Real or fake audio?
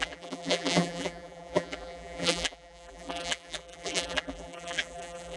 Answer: fake